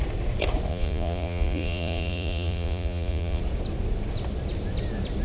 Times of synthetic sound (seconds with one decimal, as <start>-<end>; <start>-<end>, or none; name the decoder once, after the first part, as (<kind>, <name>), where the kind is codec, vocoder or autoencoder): 0.7-3.4 (vocoder, Vocos)